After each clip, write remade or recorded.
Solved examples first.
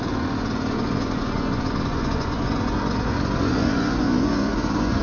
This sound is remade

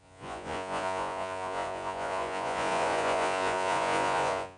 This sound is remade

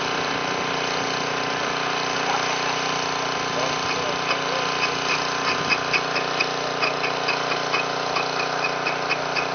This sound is recorded